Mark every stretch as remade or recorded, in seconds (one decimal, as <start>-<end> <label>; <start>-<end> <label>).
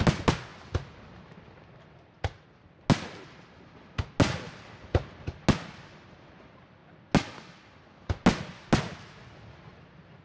0.0-10.2 recorded